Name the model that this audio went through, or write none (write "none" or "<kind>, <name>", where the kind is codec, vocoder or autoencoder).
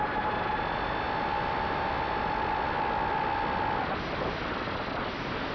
none